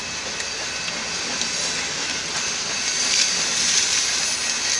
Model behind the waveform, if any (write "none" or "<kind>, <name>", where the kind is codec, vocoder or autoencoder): none